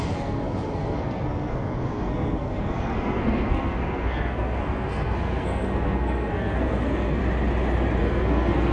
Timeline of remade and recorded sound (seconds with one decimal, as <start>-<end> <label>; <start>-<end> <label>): 0.0-7.2 remade; 7.2-8.0 recorded; 8.0-8.7 remade